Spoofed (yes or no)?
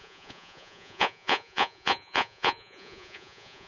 yes